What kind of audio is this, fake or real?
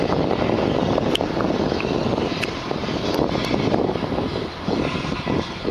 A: real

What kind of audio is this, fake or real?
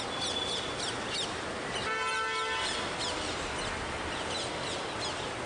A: real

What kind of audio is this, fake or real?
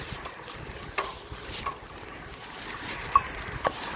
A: real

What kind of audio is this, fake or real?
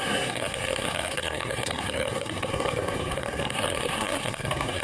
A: fake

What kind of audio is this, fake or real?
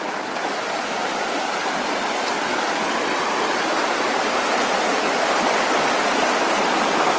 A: real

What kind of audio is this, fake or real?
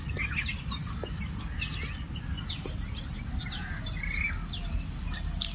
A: real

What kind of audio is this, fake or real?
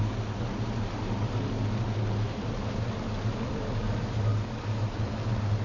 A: real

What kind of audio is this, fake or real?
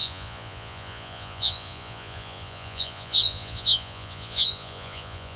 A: fake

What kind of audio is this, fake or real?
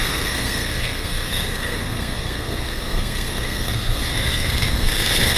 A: fake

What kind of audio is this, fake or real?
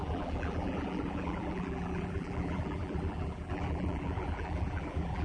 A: fake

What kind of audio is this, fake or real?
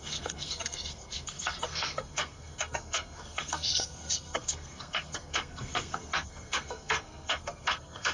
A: fake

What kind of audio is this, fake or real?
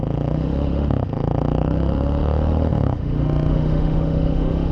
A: fake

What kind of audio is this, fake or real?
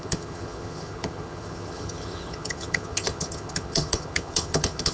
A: fake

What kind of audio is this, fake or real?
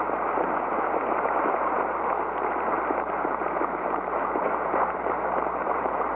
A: fake